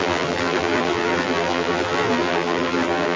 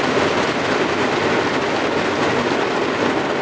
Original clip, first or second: second